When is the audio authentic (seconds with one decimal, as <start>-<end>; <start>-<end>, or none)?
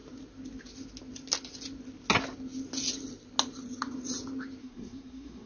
0.0-4.6